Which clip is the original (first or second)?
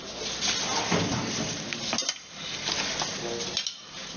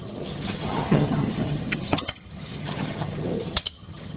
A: first